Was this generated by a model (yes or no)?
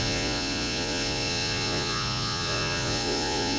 yes